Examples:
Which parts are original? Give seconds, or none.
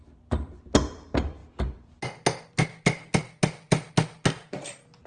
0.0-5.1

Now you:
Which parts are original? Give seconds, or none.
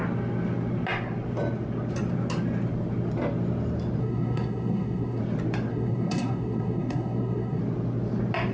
0.0-4.0; 5.2-5.7; 7.6-8.5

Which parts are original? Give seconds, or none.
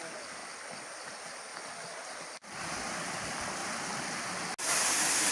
0.0-5.3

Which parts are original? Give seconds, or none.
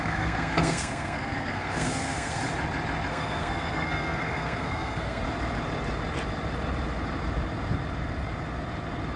2.4-3.1; 5.2-9.2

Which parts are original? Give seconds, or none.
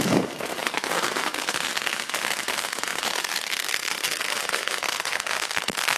none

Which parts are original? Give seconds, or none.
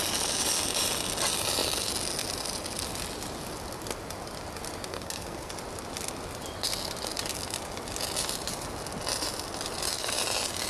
0.0-4.9; 5.5-10.7